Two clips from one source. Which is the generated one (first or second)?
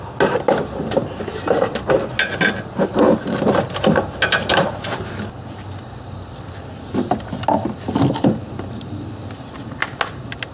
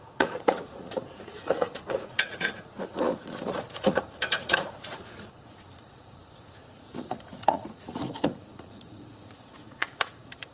second